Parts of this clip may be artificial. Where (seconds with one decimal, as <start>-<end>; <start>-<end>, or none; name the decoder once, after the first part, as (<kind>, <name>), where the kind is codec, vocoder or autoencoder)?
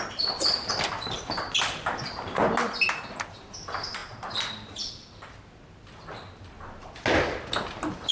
none